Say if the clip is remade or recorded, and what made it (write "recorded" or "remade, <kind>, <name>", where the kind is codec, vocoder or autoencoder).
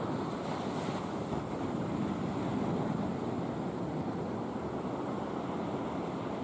recorded